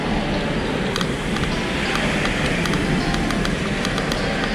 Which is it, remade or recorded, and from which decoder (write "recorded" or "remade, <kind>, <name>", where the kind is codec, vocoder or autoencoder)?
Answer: recorded